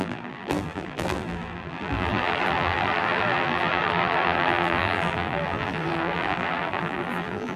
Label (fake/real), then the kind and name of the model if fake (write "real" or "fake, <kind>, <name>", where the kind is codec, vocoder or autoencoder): fake, vocoder, BigVGAN v2